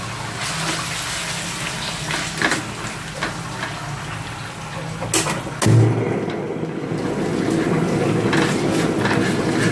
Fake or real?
real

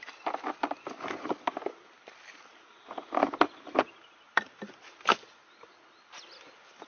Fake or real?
real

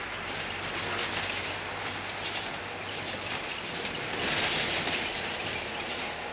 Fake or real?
real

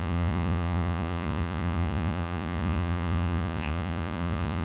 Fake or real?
fake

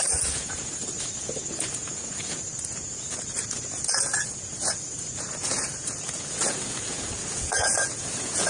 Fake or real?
fake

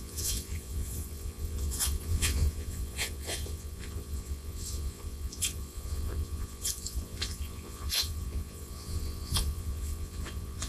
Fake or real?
fake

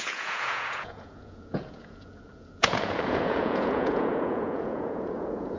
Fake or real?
fake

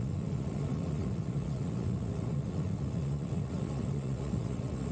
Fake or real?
fake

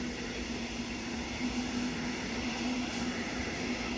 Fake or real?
real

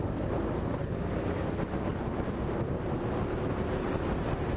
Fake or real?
real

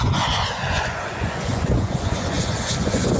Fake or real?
fake